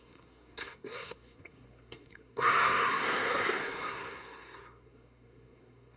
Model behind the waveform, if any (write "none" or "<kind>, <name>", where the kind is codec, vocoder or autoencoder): codec, SNAC